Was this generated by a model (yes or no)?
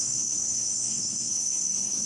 yes